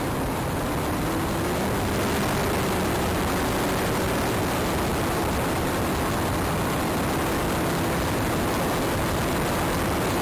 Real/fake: real